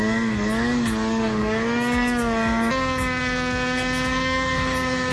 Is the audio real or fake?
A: fake